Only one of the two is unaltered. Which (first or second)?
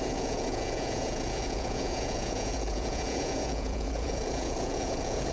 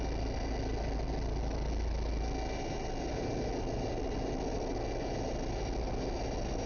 second